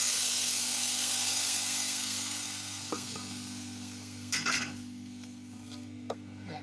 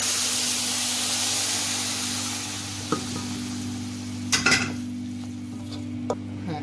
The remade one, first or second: first